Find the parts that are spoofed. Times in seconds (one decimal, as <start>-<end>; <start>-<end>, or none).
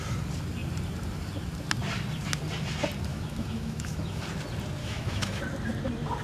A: 3.1-4.2; 4.8-5.4